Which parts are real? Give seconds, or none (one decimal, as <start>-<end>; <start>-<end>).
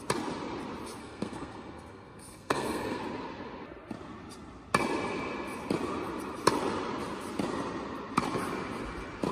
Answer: 0.0-1.0; 3.0-9.3